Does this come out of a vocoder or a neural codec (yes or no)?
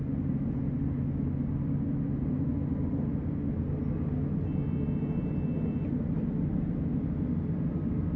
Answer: no